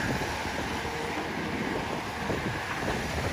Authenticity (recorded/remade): recorded